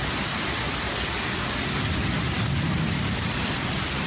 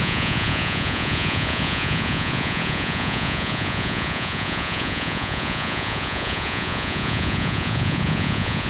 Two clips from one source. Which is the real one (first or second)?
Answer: first